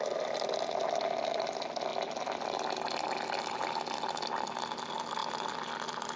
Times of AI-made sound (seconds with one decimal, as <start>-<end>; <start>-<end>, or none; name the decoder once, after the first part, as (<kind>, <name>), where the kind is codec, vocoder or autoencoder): none